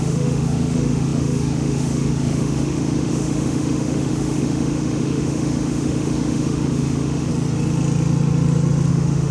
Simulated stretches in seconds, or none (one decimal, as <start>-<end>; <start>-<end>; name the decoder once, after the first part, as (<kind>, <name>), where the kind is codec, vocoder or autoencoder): 0.0-7.3 (autoencoder, DAC-VAE); 8.9-9.3

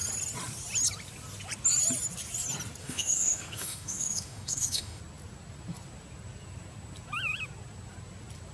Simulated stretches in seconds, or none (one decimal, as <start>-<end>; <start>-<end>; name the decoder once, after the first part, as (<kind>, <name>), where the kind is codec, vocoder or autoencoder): 2.8-5.0 (autoencoder, DAC-VAE)

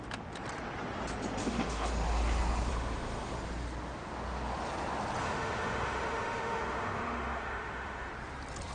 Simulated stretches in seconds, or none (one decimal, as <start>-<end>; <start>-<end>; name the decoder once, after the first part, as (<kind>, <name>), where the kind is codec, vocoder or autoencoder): 1.4-1.9 (autoencoder, DAC-VAE); 2.7-3.3; 5.2-8.1

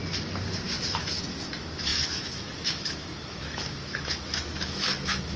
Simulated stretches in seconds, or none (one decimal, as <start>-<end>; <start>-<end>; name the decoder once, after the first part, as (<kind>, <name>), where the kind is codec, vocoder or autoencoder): 0.8-5.4 (autoencoder, DAC-VAE)

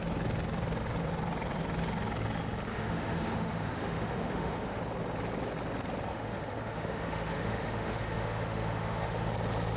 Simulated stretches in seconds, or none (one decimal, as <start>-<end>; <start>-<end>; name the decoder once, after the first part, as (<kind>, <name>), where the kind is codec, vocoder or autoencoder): 2.7-4.8 (autoencoder, DAC-VAE); 6.1-9.3